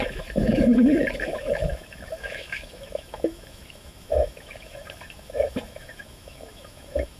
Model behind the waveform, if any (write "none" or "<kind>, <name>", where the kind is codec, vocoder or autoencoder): autoencoder, DAC-VAE